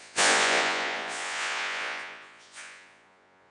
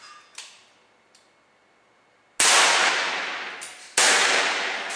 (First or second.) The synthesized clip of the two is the first